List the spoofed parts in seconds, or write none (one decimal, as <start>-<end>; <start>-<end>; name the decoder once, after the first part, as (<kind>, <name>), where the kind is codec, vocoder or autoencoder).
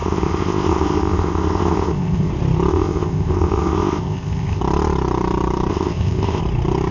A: 0.0-2.3 (codec, ZipCodec); 2.7-4.6; 5.7-6.4